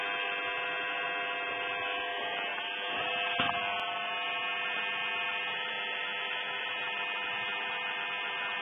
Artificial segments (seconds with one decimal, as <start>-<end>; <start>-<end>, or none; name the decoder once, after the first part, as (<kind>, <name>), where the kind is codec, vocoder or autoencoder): none